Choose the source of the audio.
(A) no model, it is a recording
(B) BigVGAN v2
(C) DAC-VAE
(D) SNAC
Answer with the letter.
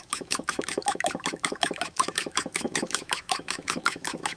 C